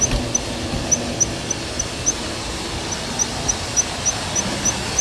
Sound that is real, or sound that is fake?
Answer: real